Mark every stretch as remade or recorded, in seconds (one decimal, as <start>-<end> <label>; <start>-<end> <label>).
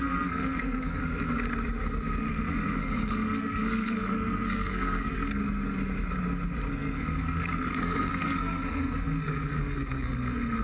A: 0.0-1.0 remade; 1.0-2.3 recorded; 2.3-5.4 remade; 5.4-6.7 recorded; 6.7-10.6 remade